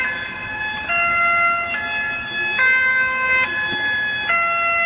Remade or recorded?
recorded